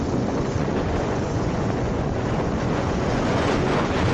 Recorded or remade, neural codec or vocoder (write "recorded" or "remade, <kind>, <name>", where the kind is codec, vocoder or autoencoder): remade, vocoder, Vocos